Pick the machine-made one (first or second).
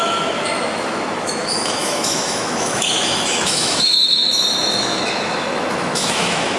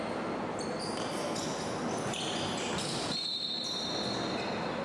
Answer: first